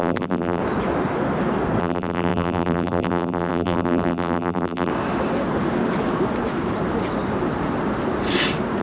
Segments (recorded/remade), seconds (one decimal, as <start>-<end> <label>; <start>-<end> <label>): 0.0-0.6 remade; 0.6-1.8 recorded; 1.8-4.9 remade; 4.9-8.8 recorded